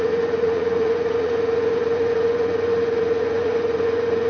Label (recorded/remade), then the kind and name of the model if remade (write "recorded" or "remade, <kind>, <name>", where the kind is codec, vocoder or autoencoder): remade, vocoder, Vocos